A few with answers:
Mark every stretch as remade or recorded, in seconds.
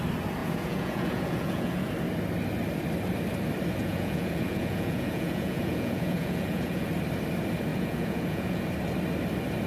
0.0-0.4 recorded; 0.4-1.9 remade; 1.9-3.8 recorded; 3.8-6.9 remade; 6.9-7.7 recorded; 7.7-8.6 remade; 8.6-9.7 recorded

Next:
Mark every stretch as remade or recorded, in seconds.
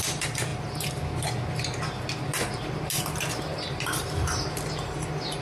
0.0-0.5 remade; 0.5-3.7 recorded; 3.7-5.4 remade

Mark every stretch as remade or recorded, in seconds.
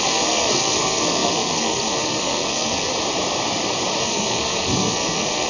0.0-2.9 remade; 2.9-4.0 recorded; 4.0-5.5 remade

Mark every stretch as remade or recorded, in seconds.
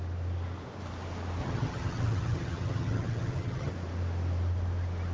0.0-1.4 recorded; 1.4-3.7 remade; 3.7-5.1 recorded